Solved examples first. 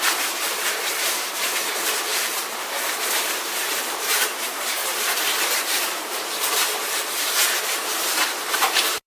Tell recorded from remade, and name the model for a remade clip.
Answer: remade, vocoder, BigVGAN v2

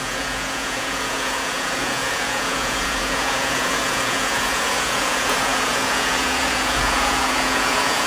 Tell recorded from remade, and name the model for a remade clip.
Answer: remade, vocoder, Vocos